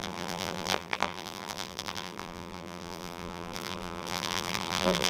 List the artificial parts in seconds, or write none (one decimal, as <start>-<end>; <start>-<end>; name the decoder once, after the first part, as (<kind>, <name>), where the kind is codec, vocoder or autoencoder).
0.0-5.1 (vocoder, BigVGAN v2)